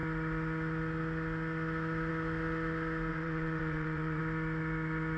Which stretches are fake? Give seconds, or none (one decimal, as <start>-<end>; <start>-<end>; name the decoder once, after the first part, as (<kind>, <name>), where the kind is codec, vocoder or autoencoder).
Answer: 3.1-4.2 (vocoder, WaveNeXt)